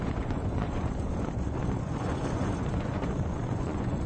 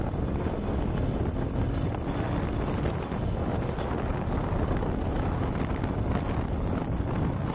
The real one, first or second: second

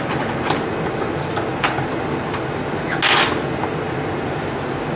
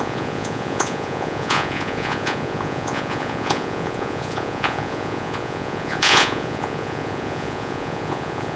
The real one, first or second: first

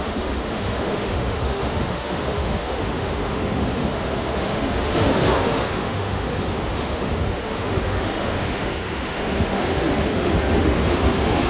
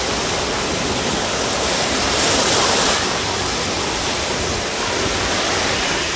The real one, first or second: second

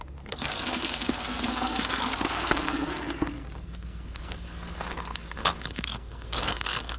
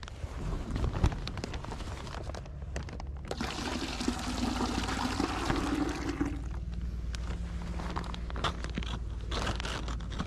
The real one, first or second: second